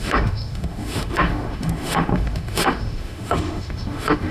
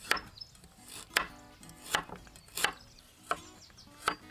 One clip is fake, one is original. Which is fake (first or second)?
first